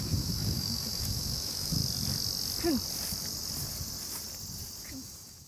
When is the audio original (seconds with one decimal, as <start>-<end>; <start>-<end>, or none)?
1.8-4.8